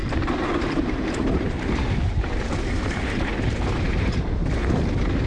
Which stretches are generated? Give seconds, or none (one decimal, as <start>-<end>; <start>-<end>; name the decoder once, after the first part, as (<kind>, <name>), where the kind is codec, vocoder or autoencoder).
0.0-3.2 (vocoder, BigVGAN v2)